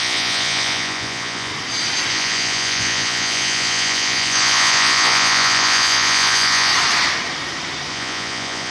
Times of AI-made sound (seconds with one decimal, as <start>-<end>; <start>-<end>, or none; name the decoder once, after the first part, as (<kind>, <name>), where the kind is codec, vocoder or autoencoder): 0.0-1.5 (vocoder, Vocos); 2.1-6.7; 7.9-8.7